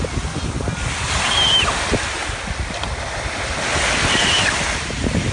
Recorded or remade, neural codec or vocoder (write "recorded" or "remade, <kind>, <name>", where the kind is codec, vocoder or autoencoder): recorded